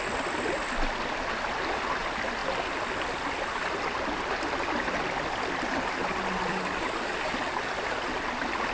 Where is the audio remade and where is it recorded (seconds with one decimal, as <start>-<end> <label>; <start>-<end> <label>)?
0.0-6.5 recorded; 6.5-7.6 remade; 7.6-8.7 recorded